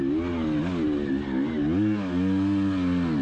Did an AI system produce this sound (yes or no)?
no